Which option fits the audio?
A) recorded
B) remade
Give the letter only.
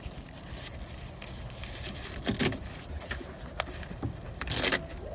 A